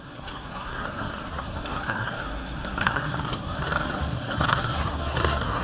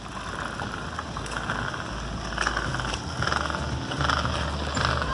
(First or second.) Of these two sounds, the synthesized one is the first